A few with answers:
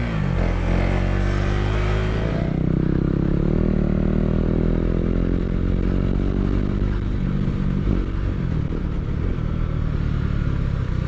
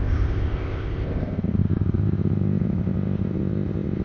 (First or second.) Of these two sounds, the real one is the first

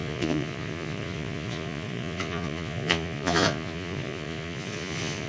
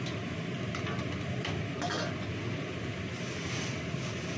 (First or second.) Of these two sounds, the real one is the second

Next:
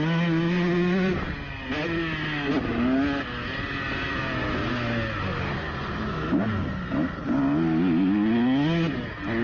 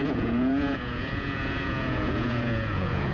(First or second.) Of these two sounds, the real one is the first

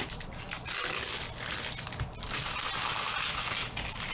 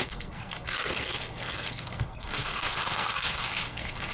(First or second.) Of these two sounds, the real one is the first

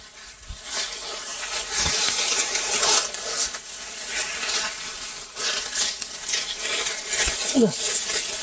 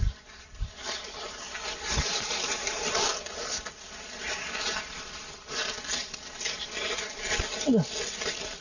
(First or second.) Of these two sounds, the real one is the second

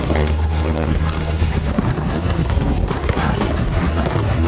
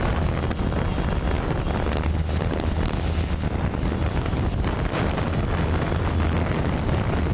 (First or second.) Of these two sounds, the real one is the second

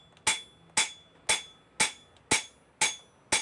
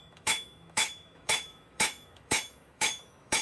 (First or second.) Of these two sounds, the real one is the first